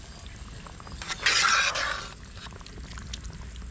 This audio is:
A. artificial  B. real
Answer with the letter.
B